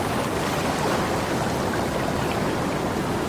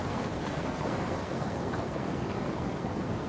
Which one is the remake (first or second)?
second